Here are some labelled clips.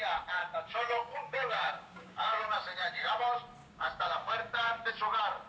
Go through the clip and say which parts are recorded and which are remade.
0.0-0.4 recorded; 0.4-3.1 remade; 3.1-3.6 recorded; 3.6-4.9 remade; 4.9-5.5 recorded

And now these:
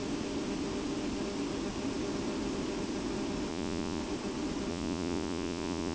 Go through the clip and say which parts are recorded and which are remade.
0.0-3.5 recorded; 3.5-4.0 remade; 4.0-4.7 recorded; 4.7-5.9 remade

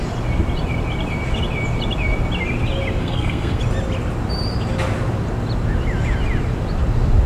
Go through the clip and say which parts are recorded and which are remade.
0.0-3.0 recorded; 3.0-3.6 remade; 3.6-7.3 recorded

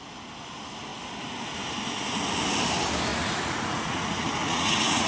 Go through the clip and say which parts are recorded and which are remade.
0.0-3.1 recorded; 3.1-5.1 remade

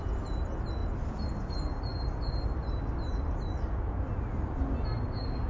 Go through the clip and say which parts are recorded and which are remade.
0.0-5.5 recorded

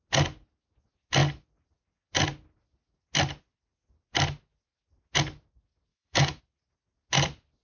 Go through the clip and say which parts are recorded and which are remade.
0.0-5.9 recorded; 5.9-6.4 remade; 6.4-7.6 recorded